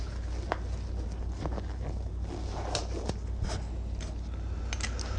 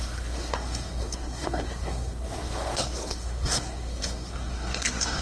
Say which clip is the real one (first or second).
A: first